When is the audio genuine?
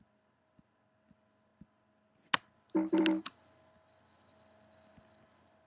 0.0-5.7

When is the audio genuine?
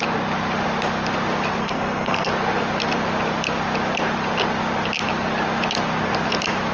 0.0-1.6; 2.3-6.7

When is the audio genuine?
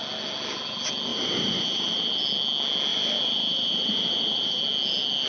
0.0-1.1; 2.2-2.9; 4.6-5.3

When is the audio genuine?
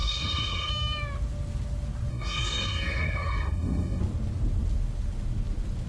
0.7-2.1; 4.0-5.9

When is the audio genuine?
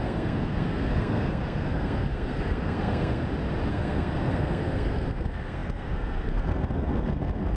3.2-3.7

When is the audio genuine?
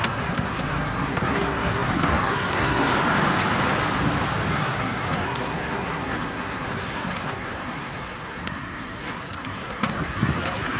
2.9-4.5